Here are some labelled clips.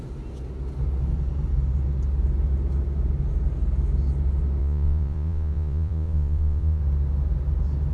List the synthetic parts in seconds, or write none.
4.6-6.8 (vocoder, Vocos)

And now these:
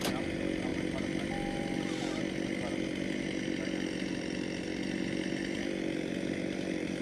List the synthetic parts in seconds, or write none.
none

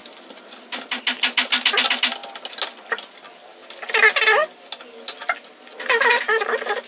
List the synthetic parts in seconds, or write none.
none

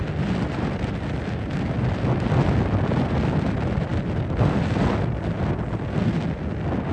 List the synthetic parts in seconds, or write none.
none

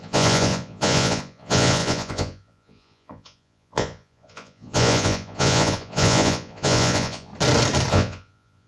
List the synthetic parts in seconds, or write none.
0.0-7.3 (vocoder, Vocos); 7.9-8.7

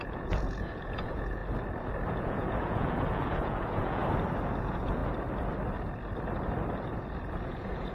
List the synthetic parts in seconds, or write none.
0.0-1.4 (vocoder, Vocos); 2.1-4.0; 4.6-5.0; 7.3-7.9

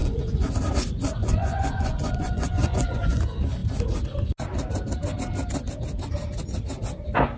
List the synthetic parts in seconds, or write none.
0.0-0.5 (vocoder, Vocos); 1.2-3.2

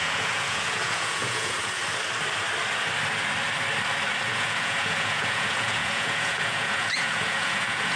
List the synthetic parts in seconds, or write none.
0.0-1.8 (vocoder, Vocos); 4.3-8.0